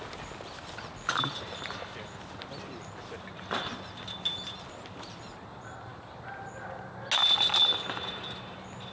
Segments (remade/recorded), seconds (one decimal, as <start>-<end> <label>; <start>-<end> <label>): 0.0-8.9 recorded